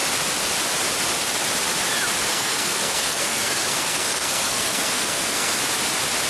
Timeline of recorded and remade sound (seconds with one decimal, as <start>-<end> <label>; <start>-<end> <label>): 0.0-2.3 recorded; 2.3-5.6 remade; 5.6-6.3 recorded